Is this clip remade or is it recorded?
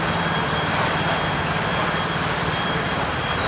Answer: remade